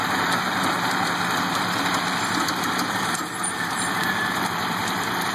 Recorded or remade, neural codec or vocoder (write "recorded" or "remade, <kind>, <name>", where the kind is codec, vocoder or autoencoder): remade, vocoder, BigVGAN v2